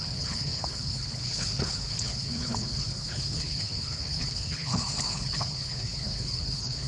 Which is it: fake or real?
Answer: fake